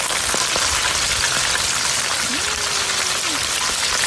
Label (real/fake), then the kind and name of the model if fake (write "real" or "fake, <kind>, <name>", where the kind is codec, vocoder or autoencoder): real